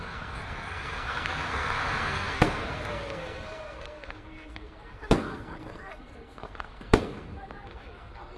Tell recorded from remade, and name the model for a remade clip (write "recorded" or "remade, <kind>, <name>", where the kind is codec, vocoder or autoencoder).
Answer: remade, codec, SNAC